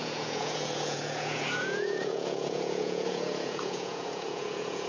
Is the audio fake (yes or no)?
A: yes